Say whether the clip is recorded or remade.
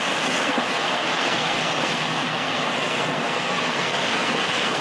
remade